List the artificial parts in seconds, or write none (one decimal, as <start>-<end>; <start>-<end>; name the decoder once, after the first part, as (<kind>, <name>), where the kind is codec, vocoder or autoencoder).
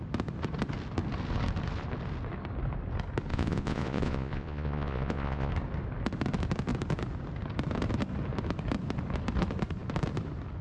3.3-5.5 (vocoder, Vocos)